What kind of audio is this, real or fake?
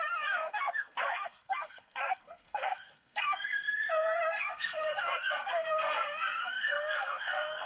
fake